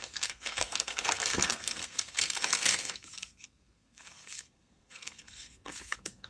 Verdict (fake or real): fake